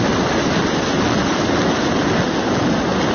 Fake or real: real